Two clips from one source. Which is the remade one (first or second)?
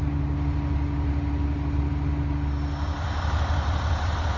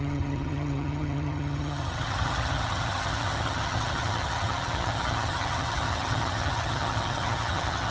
second